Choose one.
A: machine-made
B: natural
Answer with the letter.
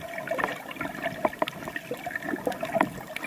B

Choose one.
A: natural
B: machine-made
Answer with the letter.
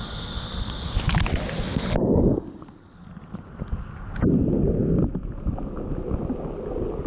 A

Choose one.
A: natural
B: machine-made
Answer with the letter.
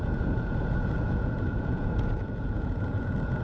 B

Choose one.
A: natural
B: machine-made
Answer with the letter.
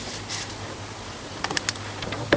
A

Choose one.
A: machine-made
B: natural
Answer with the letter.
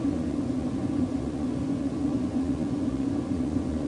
A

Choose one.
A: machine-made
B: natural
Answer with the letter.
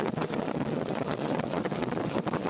A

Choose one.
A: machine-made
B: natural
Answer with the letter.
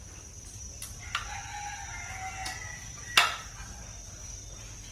B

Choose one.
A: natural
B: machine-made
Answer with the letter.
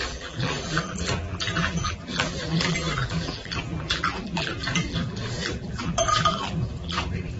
B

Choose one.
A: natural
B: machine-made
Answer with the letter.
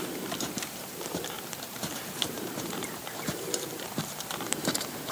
B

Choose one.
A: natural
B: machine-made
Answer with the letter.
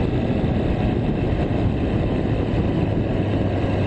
A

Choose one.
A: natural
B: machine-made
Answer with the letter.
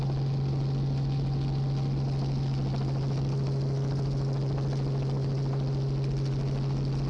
A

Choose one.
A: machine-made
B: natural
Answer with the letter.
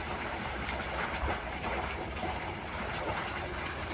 A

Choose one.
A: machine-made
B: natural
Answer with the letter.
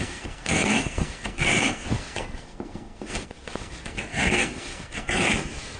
A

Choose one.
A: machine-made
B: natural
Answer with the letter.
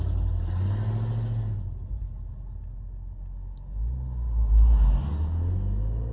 B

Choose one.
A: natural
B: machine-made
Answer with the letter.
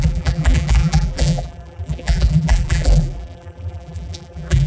B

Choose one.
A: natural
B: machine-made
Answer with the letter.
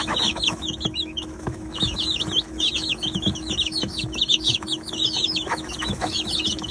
B